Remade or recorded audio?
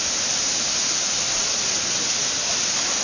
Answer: recorded